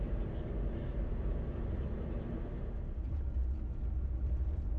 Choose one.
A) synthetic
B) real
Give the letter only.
B